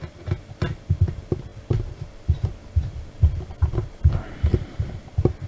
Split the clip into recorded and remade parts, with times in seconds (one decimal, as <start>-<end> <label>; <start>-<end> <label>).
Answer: 0.0-5.5 recorded